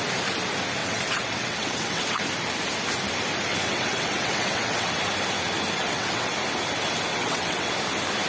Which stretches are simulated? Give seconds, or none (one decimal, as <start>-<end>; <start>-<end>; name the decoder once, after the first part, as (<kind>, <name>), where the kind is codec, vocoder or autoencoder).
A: 0.8-2.2 (vocoder, WaveNeXt); 3.5-4.9; 5.8-6.3; 7.1-7.7